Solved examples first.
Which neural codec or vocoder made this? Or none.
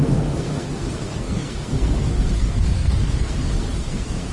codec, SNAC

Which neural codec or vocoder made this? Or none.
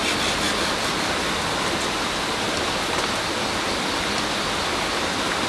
none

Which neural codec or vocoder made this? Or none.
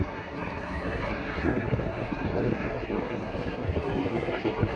codec, SNAC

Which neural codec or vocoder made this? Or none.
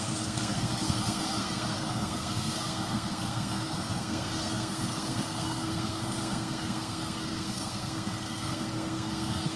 codec, SNAC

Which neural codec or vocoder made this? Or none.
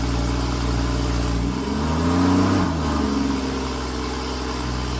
none